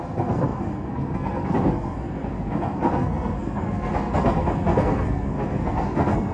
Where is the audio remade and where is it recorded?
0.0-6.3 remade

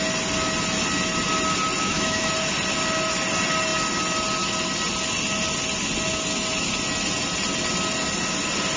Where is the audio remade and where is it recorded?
0.0-1.8 recorded; 1.8-2.3 remade; 2.3-8.8 recorded